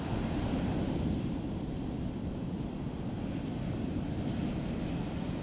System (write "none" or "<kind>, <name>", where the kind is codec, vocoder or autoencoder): none